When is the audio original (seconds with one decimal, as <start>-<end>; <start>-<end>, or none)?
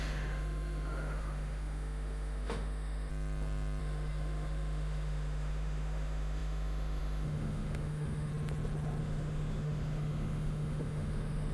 3.1-3.8; 8.3-9.0